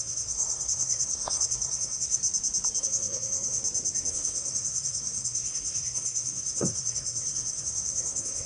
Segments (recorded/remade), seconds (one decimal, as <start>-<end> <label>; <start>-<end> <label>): 0.0-2.2 remade; 2.2-2.8 recorded; 2.8-3.6 remade; 3.6-4.1 recorded; 4.1-8.5 remade